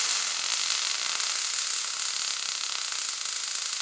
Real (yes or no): yes